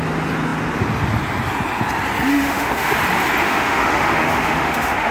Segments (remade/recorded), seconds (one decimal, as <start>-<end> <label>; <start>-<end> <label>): 0.0-2.3 recorded; 2.3-3.0 remade; 3.0-3.4 recorded; 3.4-5.1 remade